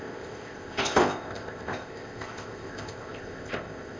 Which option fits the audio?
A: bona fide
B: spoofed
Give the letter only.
B